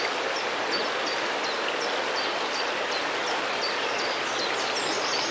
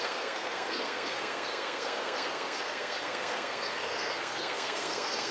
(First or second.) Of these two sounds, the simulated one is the second